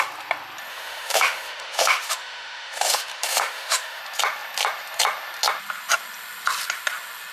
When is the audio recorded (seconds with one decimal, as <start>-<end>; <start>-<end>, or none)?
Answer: 0.0-0.7; 4.0-7.3